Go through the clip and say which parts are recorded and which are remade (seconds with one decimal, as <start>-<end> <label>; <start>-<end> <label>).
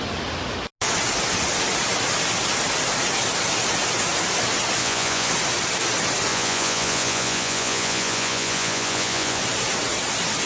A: 0.0-4.8 recorded; 4.8-5.3 remade; 5.3-6.3 recorded; 6.3-9.4 remade; 9.4-10.5 recorded